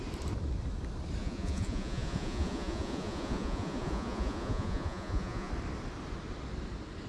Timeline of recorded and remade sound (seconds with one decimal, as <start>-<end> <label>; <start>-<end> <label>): 0.0-1.2 recorded; 1.2-5.5 remade; 5.5-7.1 recorded